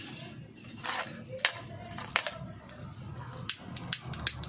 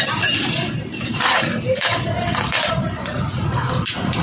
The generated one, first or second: second